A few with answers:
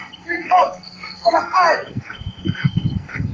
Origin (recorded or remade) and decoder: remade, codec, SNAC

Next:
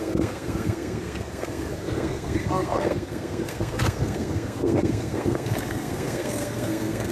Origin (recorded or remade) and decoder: remade, codec, SNAC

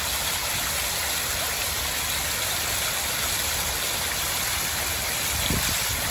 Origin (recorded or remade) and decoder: recorded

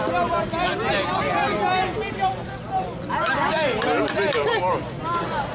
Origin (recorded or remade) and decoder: recorded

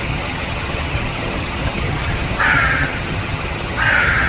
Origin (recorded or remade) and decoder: remade, vocoder, HiFi-GAN